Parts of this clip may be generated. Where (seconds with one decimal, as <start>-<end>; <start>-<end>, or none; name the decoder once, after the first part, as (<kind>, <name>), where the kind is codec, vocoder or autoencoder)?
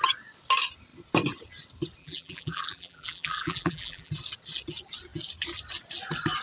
2.0-4.1 (vocoder, BigVGAN v2)